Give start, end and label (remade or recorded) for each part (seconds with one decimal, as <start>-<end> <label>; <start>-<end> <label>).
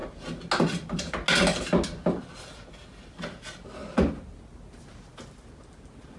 0.0-6.2 recorded